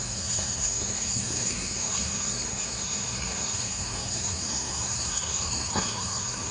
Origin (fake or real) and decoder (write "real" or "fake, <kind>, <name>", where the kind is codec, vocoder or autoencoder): fake, codec, SNAC